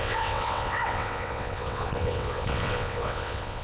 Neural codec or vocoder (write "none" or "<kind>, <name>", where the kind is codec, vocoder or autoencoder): vocoder, WaveNeXt